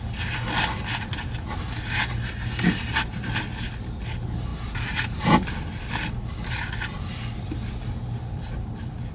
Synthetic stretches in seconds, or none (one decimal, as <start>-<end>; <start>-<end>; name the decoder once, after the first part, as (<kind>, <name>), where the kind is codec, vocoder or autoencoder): none